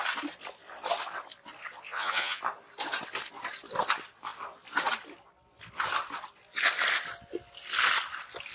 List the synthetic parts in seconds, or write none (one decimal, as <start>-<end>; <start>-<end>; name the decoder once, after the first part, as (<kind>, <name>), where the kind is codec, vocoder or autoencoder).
1.9-2.4 (vocoder, Vocos)